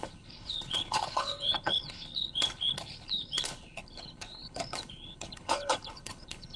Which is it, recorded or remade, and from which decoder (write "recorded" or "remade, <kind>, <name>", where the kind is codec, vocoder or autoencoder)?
remade, codec, HILCodec